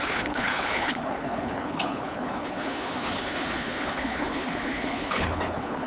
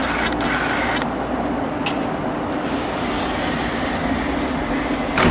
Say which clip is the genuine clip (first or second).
second